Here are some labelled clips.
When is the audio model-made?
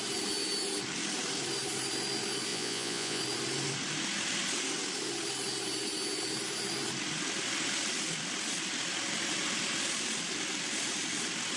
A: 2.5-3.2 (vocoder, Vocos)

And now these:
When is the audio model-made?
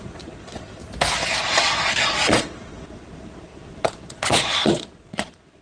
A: 0.0-0.8 (vocoder, Vocos); 1.4-5.6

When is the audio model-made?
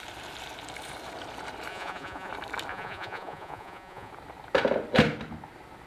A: 1.7-2.3 (vocoder, Vocos); 2.7-4.1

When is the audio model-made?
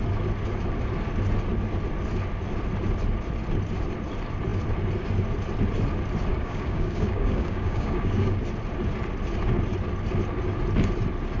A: 6.3-8.4 (codec, DAC)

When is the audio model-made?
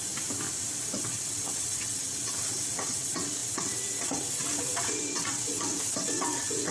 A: 0.8-6.7 (vocoder, WaveNeXt)